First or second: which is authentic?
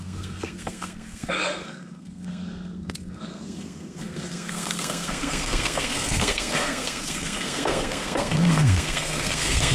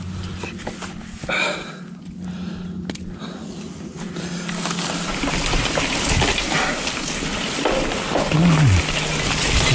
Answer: second